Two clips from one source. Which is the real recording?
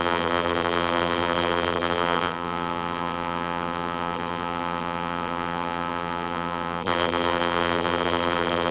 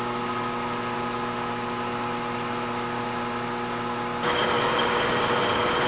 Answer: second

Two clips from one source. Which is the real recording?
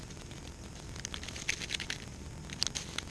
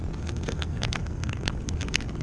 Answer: first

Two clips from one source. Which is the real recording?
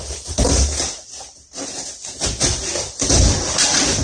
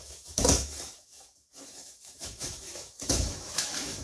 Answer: first